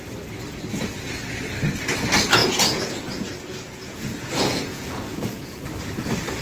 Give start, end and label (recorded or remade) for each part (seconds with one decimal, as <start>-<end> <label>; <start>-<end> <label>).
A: 0.0-2.4 recorded; 2.4-5.6 remade; 5.6-6.4 recorded